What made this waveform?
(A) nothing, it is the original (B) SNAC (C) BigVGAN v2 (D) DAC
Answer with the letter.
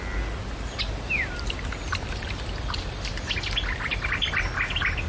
A